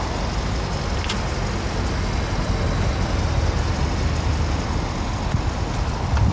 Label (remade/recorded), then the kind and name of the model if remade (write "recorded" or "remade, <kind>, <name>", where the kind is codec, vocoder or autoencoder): recorded